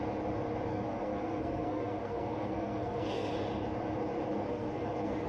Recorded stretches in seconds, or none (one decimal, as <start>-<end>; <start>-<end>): 0.0-0.7; 3.3-4.3